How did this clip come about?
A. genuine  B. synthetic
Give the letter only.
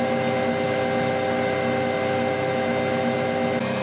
A